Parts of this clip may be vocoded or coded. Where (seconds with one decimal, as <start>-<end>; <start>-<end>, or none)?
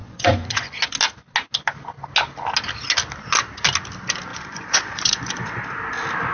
0.0-0.8; 4.3-5.6